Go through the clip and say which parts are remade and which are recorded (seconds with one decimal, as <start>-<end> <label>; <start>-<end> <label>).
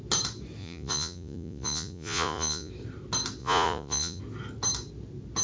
0.0-0.6 recorded; 0.6-2.7 remade; 2.7-3.4 recorded; 3.4-4.2 remade; 4.2-5.4 recorded